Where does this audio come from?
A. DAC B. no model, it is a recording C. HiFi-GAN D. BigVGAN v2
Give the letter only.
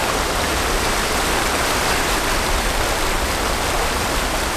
D